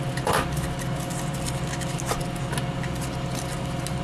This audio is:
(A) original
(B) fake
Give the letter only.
A